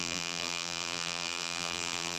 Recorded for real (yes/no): no